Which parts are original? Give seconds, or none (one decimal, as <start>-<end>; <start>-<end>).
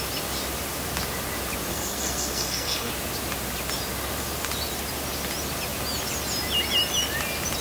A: 0.0-1.7; 2.9-7.6